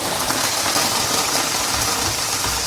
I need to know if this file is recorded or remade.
recorded